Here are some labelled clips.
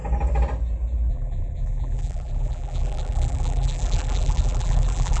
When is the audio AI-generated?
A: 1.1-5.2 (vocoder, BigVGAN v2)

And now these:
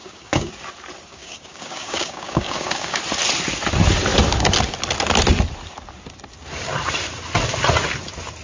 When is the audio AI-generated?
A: 0.0-0.5 (codec, DAC); 1.1-3.0

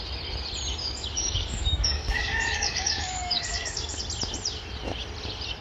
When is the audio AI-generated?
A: 0.8-4.0 (codec, DAC)